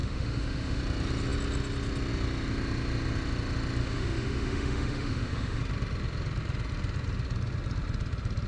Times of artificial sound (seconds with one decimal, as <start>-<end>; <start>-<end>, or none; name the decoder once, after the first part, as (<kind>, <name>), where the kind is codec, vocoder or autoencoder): 0.0-0.8 (autoencoder, DAC-VAE); 3.8-5.6